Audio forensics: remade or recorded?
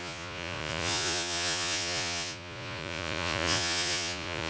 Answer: remade